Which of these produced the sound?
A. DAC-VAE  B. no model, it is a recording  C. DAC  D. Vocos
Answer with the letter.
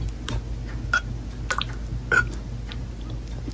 B